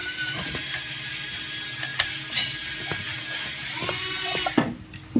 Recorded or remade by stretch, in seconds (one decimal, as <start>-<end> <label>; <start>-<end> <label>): 0.0-5.2 recorded